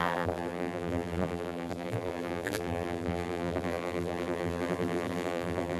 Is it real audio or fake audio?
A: fake